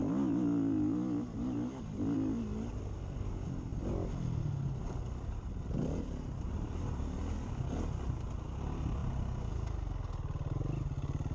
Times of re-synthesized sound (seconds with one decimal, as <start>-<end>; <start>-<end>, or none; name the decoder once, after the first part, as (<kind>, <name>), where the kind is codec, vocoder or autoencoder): none